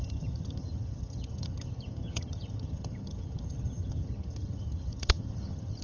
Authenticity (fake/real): fake